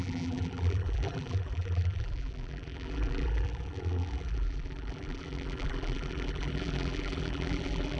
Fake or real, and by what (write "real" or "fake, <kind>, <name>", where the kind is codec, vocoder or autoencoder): fake, vocoder, BigVGAN v2